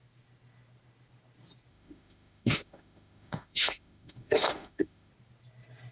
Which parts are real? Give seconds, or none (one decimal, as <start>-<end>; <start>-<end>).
0.0-1.7; 5.1-5.9